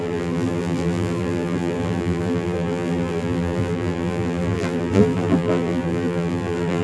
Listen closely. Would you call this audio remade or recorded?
remade